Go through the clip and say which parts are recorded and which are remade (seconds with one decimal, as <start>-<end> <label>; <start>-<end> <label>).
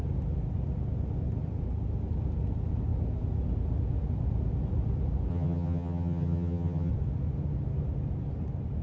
0.0-5.3 recorded; 5.3-6.9 remade; 6.9-8.8 recorded